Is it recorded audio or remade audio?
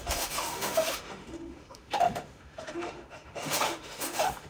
remade